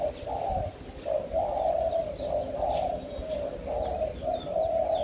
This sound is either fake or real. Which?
real